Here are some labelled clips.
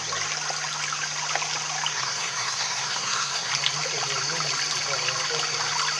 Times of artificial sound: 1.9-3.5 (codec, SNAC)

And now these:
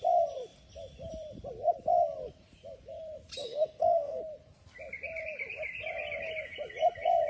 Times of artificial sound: 3.4-4.2 (autoencoder, DAC-VAE)

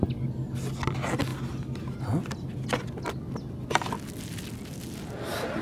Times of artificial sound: none

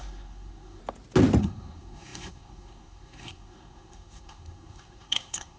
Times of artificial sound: 0.0-0.8 (codec, SNAC); 1.4-5.6

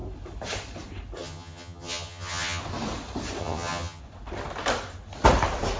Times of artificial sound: 1.2-2.6 (vocoder, HiFi-GAN); 3.4-4.0

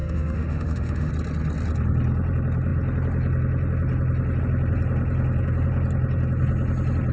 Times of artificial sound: 0.0-1.1 (autoencoder, DAC-VAE)

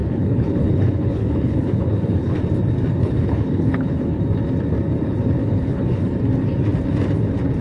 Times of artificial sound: 0.0-2.4 (codec, HILCodec); 3.0-4.2; 5.4-6.1

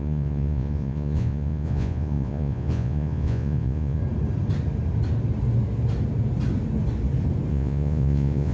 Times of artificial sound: 0.0-4.0 (vocoder, Vocos); 7.5-8.5